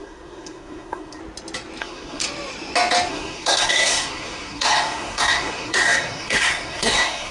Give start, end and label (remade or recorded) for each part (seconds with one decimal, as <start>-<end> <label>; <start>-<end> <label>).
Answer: 0.0-1.2 remade; 1.2-1.8 recorded; 1.8-2.2 remade; 2.2-3.1 recorded; 3.1-7.3 remade